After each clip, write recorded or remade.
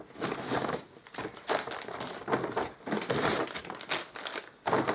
recorded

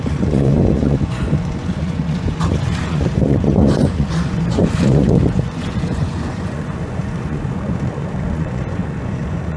remade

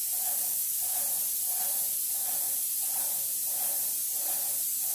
recorded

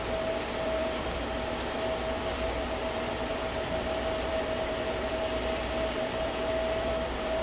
remade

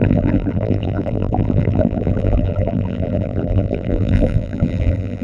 remade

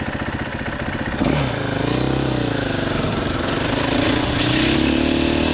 recorded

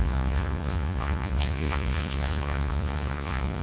remade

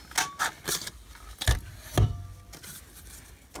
recorded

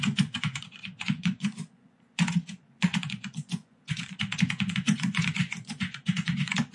remade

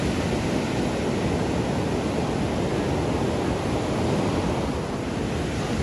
recorded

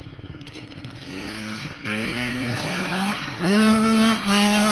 remade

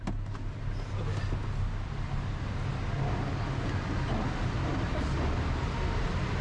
recorded